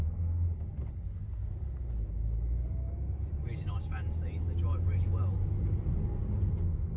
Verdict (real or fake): real